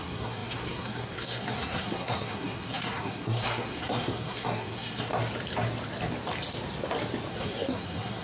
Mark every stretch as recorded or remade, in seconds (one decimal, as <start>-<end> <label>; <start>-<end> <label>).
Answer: 0.0-5.1 remade; 5.1-7.3 recorded; 7.3-8.2 remade